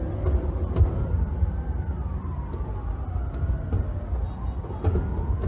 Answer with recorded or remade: recorded